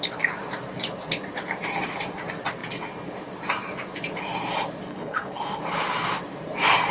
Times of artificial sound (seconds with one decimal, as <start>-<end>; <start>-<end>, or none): 4.9-5.6